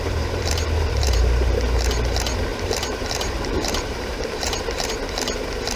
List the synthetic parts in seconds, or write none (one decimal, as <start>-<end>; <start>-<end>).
0.0-1.5; 2.5-4.9